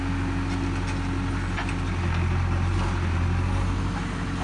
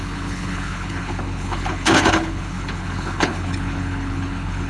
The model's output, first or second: second